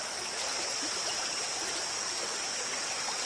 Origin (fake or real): real